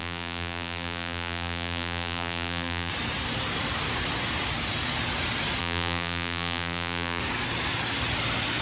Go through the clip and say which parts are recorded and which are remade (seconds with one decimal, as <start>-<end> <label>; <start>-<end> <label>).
0.0-2.9 remade; 2.9-5.6 recorded; 5.6-7.2 remade; 7.2-8.6 recorded

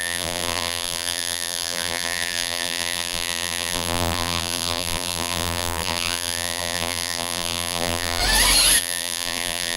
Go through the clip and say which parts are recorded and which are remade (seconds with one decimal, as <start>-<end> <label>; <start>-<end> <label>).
0.0-8.2 remade; 8.2-8.8 recorded; 8.8-9.8 remade